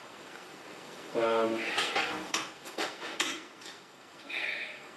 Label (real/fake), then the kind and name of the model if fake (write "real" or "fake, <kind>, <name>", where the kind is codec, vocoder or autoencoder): fake, codec, SNAC